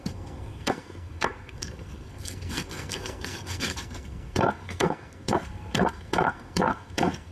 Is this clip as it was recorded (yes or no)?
no